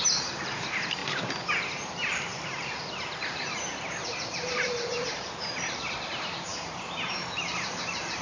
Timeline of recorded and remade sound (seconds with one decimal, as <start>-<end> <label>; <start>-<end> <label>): 0.0-1.0 remade; 1.0-1.9 recorded; 1.9-8.2 remade